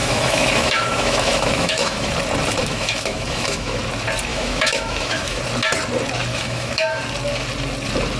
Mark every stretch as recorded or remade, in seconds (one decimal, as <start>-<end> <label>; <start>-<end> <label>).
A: 0.0-2.1 remade; 2.1-2.6 recorded; 2.6-3.8 remade; 3.8-4.3 recorded; 4.3-5.4 remade; 5.4-6.3 recorded; 6.3-7.0 remade; 7.0-8.2 recorded